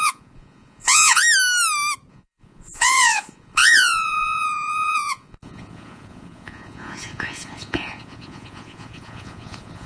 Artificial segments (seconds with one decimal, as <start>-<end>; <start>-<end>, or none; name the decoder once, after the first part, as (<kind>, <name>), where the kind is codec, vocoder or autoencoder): 0.0-1.2 (vocoder, Vocos); 2.1-9.9